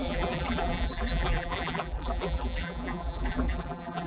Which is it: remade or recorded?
remade